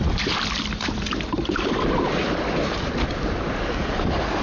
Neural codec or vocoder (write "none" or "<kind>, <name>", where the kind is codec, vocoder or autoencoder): none